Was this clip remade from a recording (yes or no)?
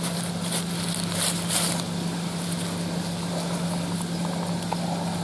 no